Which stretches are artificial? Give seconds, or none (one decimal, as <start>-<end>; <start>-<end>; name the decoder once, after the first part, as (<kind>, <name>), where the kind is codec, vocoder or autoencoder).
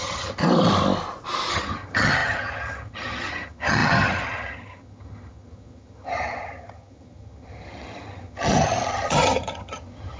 0.0-0.4 (vocoder, HiFi-GAN); 1.5-10.2